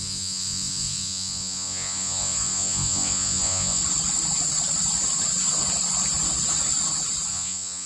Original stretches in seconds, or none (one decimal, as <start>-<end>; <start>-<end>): 3.8-7.3